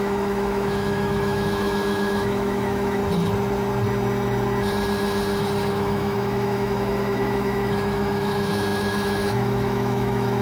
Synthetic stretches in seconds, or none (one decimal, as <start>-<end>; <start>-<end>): 0.0-3.0; 5.7-10.4